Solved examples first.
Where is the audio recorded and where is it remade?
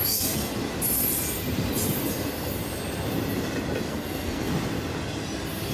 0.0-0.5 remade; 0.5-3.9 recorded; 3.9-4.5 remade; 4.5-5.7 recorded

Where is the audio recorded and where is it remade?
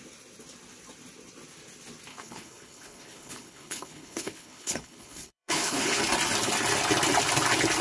0.0-2.1 recorded; 2.1-6.0 remade; 6.0-7.8 recorded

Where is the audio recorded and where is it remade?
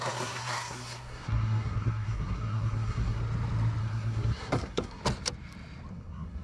0.0-3.2 remade; 3.2-3.8 recorded; 3.8-5.0 remade; 5.0-5.9 recorded; 5.9-6.4 remade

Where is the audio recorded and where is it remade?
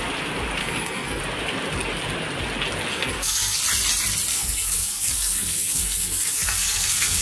0.0-0.6 recorded; 0.6-1.2 remade; 1.2-2.9 recorded; 2.9-3.6 remade; 3.6-4.3 recorded; 4.3-7.2 remade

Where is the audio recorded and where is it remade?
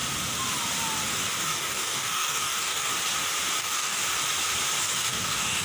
0.0-1.4 recorded; 1.4-2.9 remade; 2.9-3.6 recorded; 3.6-4.0 remade; 4.0-4.8 recorded; 4.8-5.6 remade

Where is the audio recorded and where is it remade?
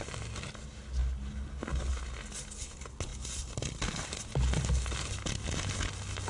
0.0-3.1 recorded; 3.1-4.7 remade; 4.7-6.3 recorded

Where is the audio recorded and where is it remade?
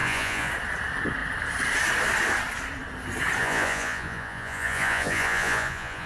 0.0-0.5 remade; 0.5-3.4 recorded; 3.4-6.1 remade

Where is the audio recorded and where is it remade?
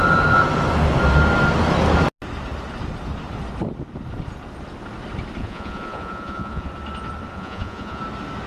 0.0-5.4 recorded; 5.4-6.7 remade; 6.7-7.3 recorded; 7.3-8.0 remade; 8.0-8.5 recorded